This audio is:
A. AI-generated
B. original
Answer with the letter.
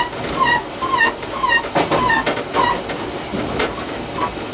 B